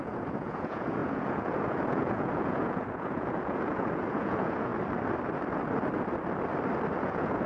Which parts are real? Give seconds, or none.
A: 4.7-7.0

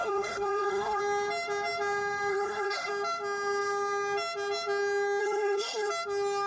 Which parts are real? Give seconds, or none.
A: 1.0-2.3; 2.9-5.2; 5.9-6.5

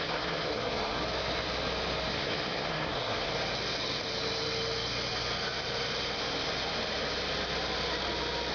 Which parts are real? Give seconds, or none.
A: 1.0-2.1; 3.3-8.5

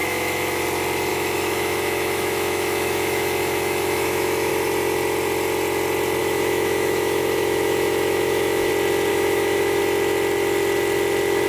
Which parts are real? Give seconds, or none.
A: 0.6-1.1; 4.5-6.2; 8.7-9.1; 9.8-11.5

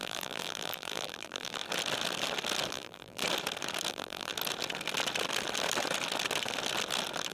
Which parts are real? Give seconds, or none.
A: 1.6-2.7; 3.2-3.9; 4.3-7.3

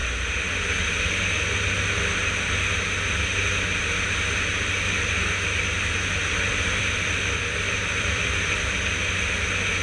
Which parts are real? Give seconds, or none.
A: 0.0-6.2; 8.7-9.8

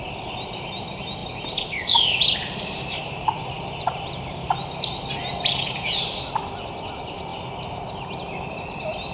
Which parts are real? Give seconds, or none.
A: 0.0-1.2; 6.2-9.1